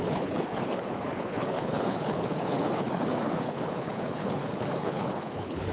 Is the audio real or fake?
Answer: fake